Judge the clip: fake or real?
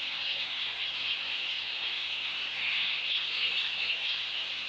fake